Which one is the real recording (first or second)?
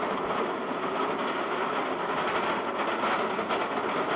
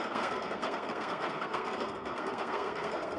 first